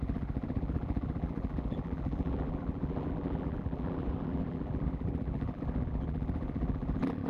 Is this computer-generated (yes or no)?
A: yes